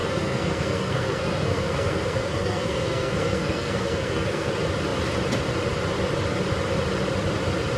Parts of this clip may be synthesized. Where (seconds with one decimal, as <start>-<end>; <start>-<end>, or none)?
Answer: 0.0-4.5